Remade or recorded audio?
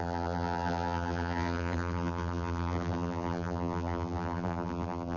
remade